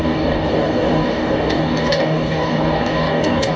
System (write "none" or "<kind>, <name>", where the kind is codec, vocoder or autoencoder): codec, DAC